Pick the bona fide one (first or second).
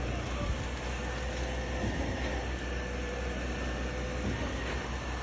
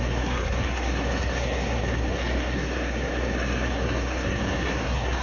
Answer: first